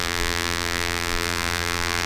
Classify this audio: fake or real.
fake